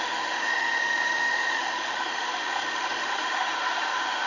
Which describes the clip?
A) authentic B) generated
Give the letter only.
B